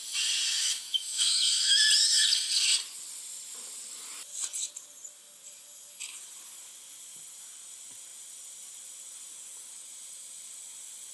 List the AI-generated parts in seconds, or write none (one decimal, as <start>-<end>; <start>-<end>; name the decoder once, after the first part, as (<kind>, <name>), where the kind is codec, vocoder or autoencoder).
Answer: 0.5-1.8 (autoencoder, DAC-VAE)